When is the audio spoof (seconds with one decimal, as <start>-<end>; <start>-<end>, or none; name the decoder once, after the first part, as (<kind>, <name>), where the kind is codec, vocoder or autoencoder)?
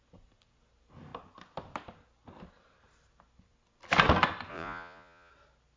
4.5-5.3 (vocoder, Vocos)